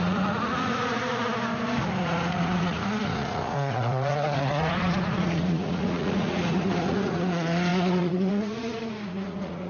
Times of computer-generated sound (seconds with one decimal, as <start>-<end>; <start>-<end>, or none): 0.0-1.2; 2.0-9.7